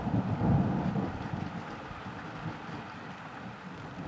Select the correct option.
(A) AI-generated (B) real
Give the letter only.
B